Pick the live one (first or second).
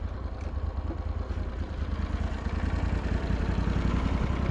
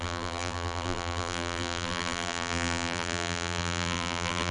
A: first